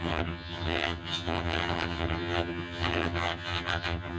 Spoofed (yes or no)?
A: yes